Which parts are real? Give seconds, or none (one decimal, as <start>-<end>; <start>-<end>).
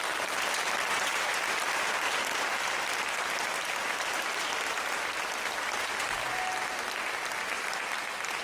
0.0-8.4